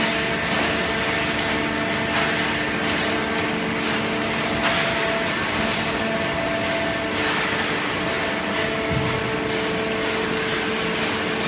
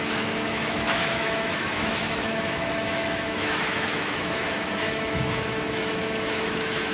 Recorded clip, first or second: first